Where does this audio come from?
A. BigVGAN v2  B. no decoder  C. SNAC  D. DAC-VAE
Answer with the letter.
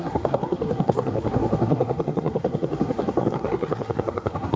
C